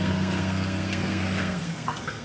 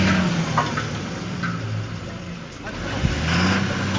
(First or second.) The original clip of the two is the second